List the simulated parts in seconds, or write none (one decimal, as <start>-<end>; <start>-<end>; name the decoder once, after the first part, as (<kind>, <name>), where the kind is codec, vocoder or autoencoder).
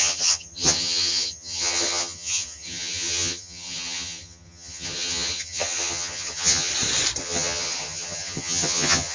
0.0-6.7 (vocoder, HiFi-GAN); 7.2-9.1